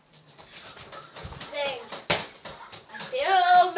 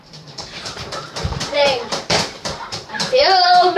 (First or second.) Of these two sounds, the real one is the first